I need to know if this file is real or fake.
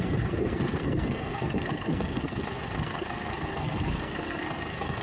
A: fake